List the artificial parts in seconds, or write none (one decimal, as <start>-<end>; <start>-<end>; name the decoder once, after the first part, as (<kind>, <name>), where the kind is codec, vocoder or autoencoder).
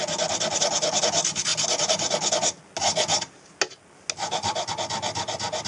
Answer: none